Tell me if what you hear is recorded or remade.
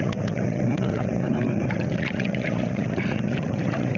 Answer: remade